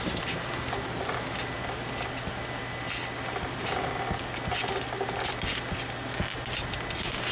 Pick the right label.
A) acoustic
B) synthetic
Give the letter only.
A